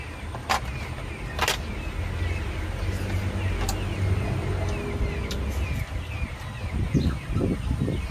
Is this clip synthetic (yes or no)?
no